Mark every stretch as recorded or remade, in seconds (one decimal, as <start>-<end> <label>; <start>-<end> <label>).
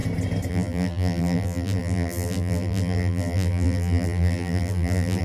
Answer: 0.0-0.5 recorded; 0.5-5.2 remade